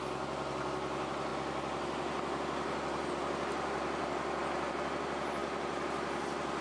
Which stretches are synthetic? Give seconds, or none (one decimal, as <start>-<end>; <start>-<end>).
none